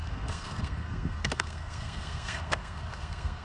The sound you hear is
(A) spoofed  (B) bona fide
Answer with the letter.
A